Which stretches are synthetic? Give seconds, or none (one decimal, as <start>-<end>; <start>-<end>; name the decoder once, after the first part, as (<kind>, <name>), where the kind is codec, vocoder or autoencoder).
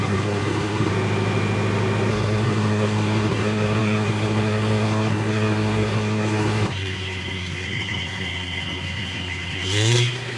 0.0-0.9 (codec, SNAC); 2.1-10.4